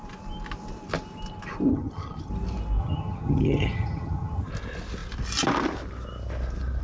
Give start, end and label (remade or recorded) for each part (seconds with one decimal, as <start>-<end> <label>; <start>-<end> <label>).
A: 0.0-1.7 recorded; 1.7-2.3 remade; 2.3-2.8 recorded; 2.8-4.5 remade; 4.5-6.8 recorded